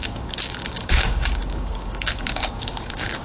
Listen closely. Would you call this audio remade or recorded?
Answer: remade